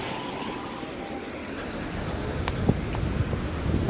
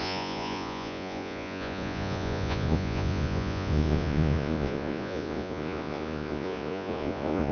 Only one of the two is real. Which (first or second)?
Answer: first